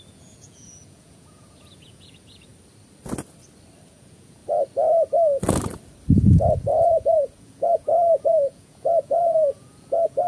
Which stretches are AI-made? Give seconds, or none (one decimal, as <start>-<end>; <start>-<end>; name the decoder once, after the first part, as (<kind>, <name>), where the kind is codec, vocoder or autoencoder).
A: 0.0-2.5 (vocoder, Vocos); 3.9-4.4; 6.1-10.3